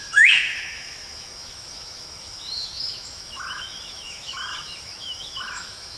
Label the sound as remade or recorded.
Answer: remade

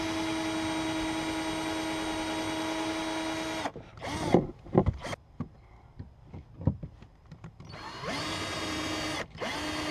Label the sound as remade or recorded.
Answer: recorded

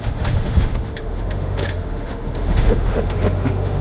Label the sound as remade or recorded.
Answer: remade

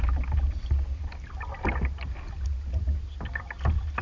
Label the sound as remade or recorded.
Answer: recorded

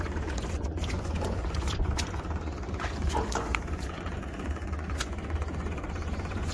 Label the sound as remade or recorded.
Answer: remade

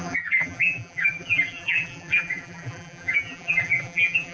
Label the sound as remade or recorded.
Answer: remade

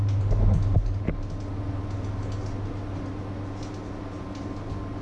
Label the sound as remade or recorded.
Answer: recorded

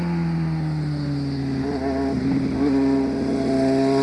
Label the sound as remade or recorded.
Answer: recorded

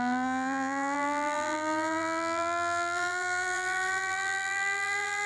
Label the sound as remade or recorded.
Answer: remade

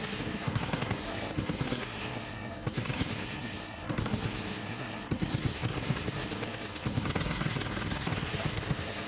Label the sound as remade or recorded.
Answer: remade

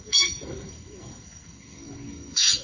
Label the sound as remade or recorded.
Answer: remade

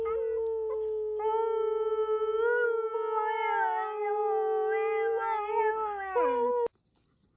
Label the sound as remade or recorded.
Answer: recorded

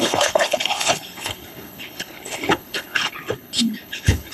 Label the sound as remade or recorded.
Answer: remade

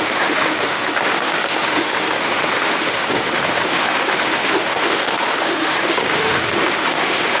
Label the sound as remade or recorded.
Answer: remade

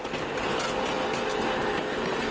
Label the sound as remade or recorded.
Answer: recorded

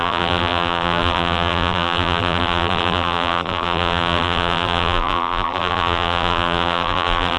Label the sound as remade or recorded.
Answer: remade